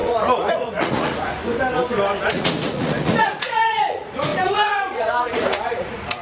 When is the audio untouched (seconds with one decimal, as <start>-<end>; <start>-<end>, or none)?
1.4-2.2